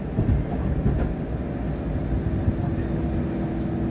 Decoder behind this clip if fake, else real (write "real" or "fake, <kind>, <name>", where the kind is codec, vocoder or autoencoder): real